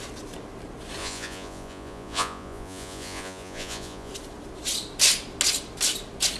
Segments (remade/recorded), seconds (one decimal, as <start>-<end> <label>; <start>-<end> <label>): 0.0-1.0 recorded; 1.0-4.1 remade; 4.1-6.4 recorded